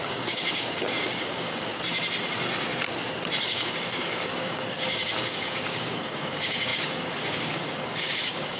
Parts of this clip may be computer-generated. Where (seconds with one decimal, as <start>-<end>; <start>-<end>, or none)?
0.0-1.7; 3.4-8.6